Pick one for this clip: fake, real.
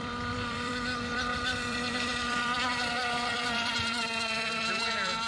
fake